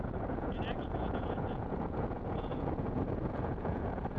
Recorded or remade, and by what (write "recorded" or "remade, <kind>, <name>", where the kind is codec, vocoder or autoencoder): remade, vocoder, Vocos